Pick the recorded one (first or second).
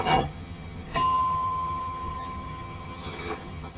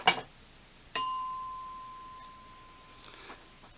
second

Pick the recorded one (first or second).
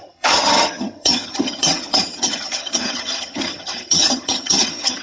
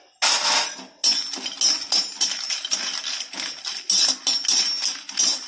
second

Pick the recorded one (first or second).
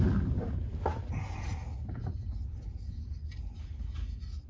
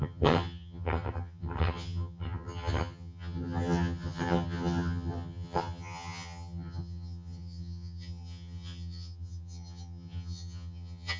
first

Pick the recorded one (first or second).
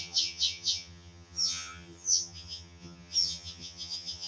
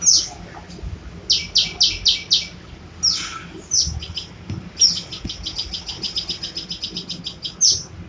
second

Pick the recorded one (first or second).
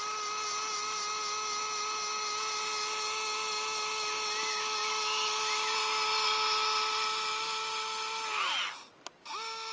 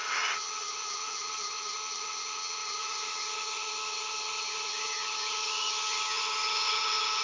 first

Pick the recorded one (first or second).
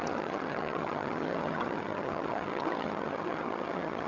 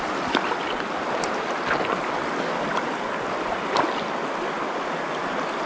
second